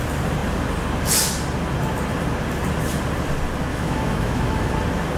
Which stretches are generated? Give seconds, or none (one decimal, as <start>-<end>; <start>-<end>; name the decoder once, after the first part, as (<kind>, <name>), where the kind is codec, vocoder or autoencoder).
3.7-4.7 (autoencoder, DAC-VAE)